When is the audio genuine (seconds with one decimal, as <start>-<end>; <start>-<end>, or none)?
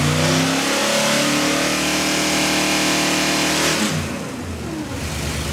0.0-5.5